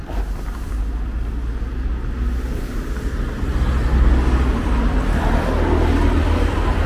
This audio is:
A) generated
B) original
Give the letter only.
B